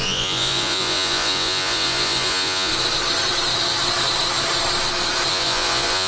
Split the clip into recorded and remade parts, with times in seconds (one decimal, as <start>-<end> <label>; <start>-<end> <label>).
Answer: 0.0-2.7 remade; 2.7-5.3 recorded; 5.3-6.1 remade